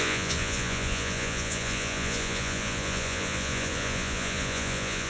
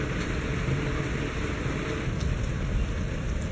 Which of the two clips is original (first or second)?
second